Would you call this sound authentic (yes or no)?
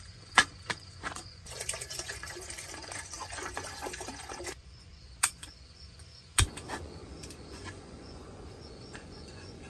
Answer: no